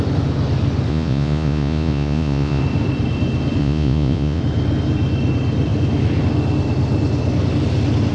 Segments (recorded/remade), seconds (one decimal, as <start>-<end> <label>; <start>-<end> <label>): 0.0-0.9 recorded; 0.9-2.6 remade; 2.6-3.6 recorded; 3.6-4.4 remade; 4.4-8.1 recorded